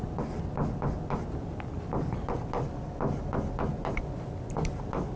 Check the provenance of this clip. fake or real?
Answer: real